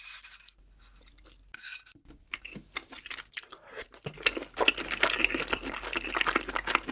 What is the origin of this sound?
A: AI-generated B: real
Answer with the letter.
B